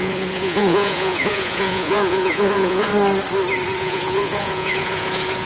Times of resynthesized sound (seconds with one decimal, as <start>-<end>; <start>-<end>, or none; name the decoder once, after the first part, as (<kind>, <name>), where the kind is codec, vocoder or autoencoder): 0.0-2.9 (vocoder, Vocos); 3.8-5.5